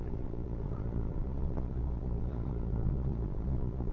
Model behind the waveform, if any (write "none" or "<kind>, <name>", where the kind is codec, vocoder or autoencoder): vocoder, Vocos